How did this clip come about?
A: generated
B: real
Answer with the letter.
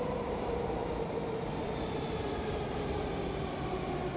B